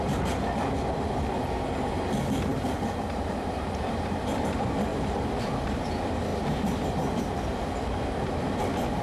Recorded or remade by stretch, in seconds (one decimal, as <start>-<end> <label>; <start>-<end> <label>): 0.0-2.5 recorded; 2.5-4.4 remade; 4.4-4.9 recorded; 4.9-5.5 remade; 5.5-6.3 recorded; 6.3-7.5 remade; 7.5-9.0 recorded